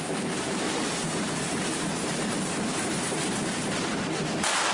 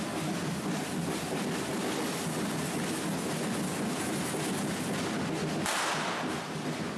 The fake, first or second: first